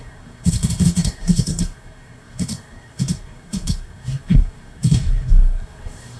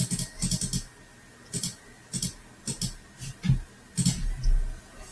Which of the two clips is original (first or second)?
second